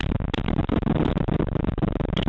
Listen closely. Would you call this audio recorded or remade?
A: recorded